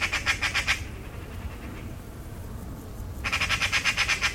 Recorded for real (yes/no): yes